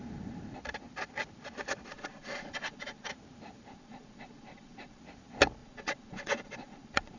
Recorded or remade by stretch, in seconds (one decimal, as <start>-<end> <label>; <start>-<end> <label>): 0.0-1.9 recorded; 1.9-3.1 remade; 3.1-3.7 recorded; 3.7-5.0 remade; 5.0-5.6 recorded; 5.6-7.2 remade